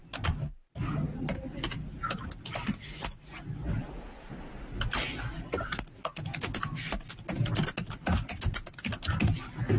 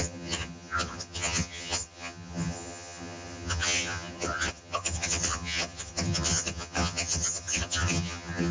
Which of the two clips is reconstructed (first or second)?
second